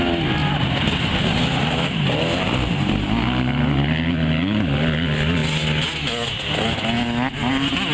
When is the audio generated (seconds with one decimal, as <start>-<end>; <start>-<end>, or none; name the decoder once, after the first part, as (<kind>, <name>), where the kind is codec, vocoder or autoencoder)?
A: 0.4-2.9 (vocoder, BigVGAN v2)